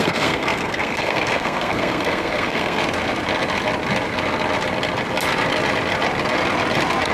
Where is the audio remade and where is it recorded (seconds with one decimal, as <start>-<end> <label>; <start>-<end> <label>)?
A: 0.0-2.8 remade; 2.8-7.1 recorded